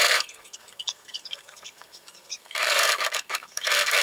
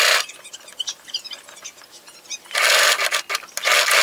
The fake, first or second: first